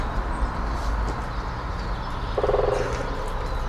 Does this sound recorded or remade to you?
recorded